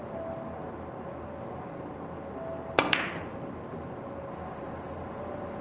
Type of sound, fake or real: real